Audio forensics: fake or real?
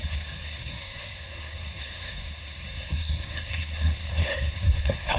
fake